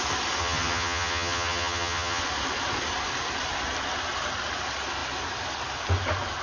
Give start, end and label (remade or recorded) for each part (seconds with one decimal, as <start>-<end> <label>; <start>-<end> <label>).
0.0-0.4 recorded; 0.4-2.2 remade; 2.2-6.4 recorded